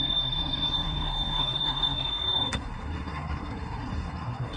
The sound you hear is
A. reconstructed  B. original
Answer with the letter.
A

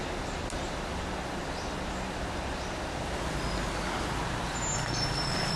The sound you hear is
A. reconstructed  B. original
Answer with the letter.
B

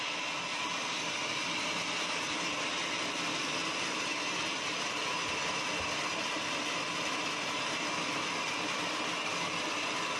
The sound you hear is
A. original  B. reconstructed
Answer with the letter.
A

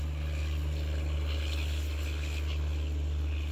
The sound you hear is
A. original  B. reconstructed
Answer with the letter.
A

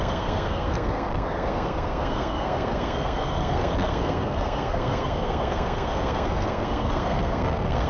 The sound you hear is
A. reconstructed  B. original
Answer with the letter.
A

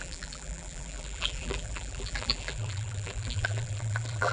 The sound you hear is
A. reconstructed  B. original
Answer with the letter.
A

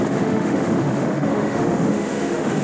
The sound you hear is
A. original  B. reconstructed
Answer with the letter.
B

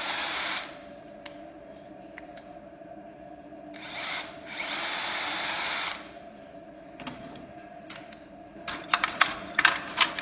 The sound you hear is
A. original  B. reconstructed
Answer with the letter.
B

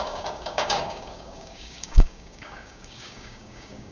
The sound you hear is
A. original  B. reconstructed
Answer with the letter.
B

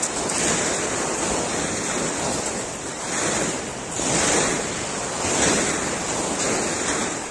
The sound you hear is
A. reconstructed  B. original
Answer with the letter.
B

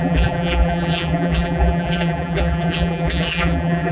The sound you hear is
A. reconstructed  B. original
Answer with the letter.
A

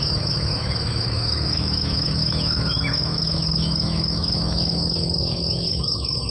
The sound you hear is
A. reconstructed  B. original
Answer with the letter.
A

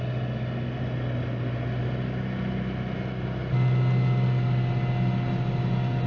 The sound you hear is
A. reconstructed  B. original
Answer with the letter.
B